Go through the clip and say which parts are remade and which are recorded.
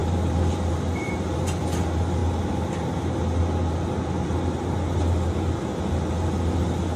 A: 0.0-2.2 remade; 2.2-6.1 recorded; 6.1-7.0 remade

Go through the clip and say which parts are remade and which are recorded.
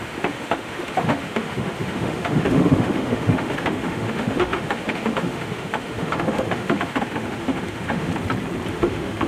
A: 0.0-8.1 remade; 8.1-8.7 recorded; 8.7-9.3 remade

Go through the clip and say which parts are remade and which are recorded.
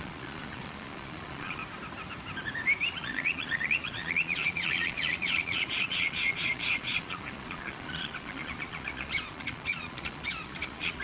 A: 0.0-1.6 remade; 1.6-2.9 recorded; 2.9-11.0 remade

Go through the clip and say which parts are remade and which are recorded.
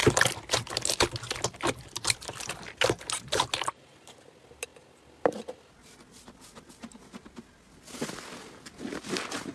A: 0.0-9.5 recorded